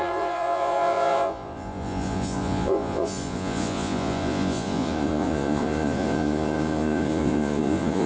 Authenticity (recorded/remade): remade